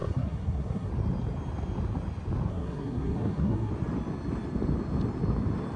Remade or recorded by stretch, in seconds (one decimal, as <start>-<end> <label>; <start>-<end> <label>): 0.0-0.9 remade; 0.9-2.5 recorded; 2.5-3.7 remade; 3.7-5.8 recorded